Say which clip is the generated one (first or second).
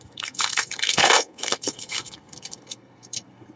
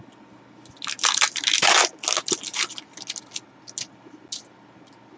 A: first